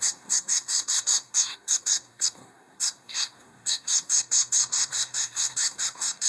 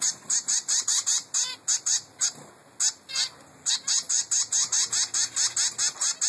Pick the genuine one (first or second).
second